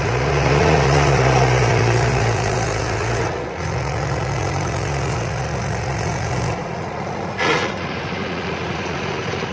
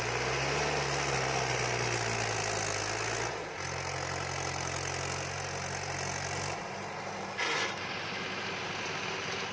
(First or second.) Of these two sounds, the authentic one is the second